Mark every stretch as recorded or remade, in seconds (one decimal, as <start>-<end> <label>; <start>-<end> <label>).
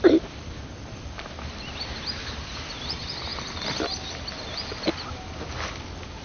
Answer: 0.0-6.2 recorded